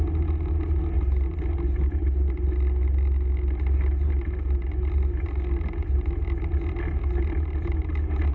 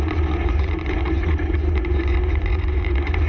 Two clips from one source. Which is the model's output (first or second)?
second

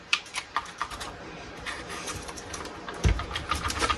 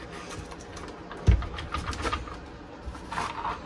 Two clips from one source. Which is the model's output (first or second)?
first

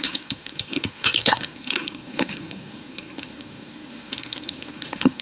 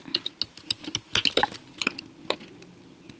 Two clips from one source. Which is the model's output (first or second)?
first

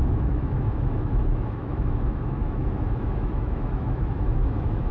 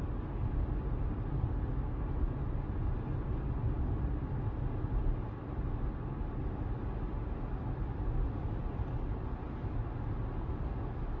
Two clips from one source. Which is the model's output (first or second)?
first